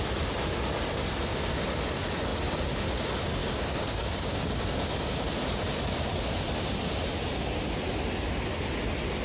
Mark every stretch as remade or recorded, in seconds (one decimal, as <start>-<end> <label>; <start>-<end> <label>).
0.0-3.4 recorded; 3.4-5.3 remade; 5.3-9.2 recorded